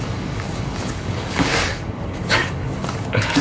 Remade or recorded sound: remade